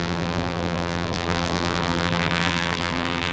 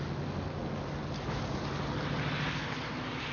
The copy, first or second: first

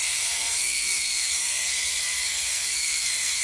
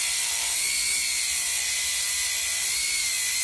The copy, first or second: first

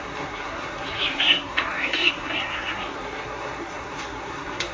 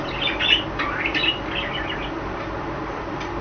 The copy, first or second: first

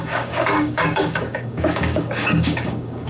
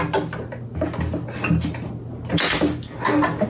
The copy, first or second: first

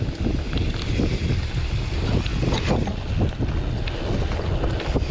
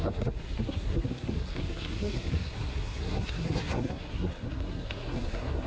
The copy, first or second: second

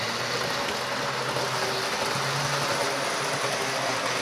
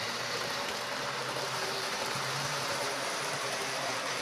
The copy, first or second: second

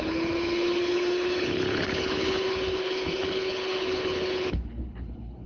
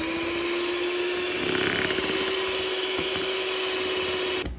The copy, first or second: first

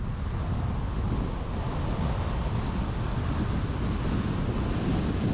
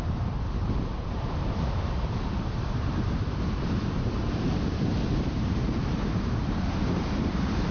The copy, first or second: second